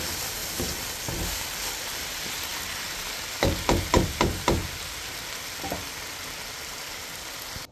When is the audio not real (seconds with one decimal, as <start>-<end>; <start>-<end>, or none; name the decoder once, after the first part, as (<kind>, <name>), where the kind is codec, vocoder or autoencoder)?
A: none